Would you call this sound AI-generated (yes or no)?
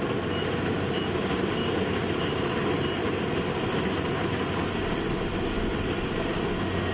no